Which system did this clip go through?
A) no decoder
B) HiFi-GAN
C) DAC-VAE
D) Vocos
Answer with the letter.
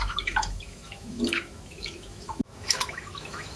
C